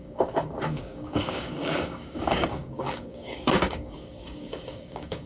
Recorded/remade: remade